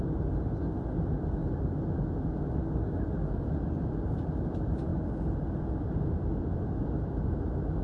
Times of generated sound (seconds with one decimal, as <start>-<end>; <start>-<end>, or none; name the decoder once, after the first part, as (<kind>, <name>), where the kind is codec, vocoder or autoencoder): none